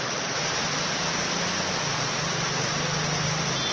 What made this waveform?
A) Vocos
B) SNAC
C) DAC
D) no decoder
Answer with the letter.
D